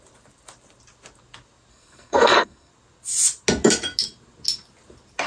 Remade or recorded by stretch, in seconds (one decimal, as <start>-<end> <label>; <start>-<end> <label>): 0.0-1.7 recorded; 1.7-2.7 remade; 2.7-5.3 recorded